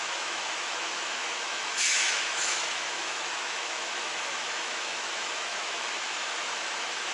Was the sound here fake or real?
fake